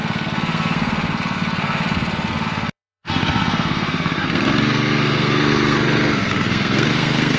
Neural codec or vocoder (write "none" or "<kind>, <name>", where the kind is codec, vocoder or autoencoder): codec, SNAC